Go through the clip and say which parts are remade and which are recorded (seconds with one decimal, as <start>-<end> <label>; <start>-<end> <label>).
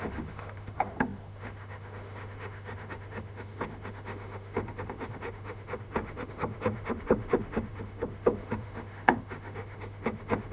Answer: 0.0-10.5 remade